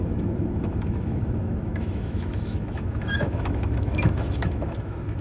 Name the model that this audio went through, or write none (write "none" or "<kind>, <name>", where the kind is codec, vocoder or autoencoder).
autoencoder, DAC-VAE